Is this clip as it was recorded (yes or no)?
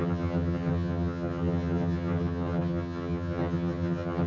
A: no